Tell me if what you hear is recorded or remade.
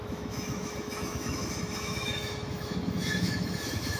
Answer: remade